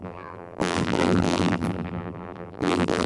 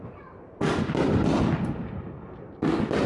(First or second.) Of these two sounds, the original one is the second